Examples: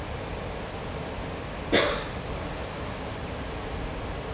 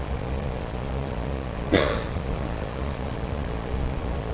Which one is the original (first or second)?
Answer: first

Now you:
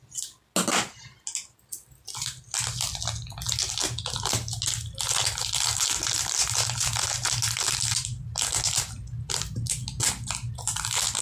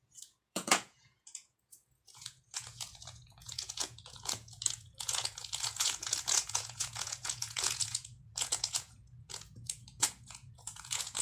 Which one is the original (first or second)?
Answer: first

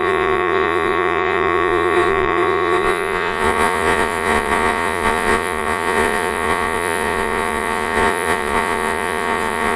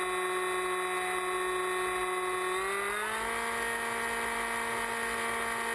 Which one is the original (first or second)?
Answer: second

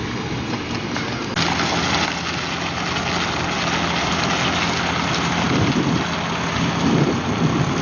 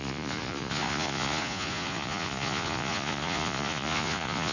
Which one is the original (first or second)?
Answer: first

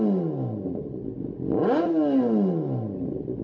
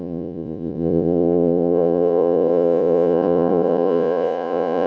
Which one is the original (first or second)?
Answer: first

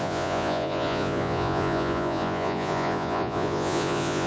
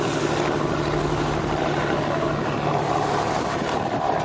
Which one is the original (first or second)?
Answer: second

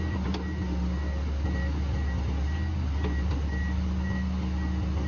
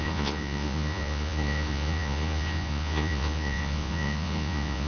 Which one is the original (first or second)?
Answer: first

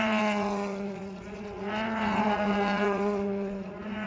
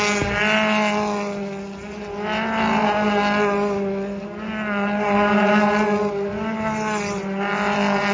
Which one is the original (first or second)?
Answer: second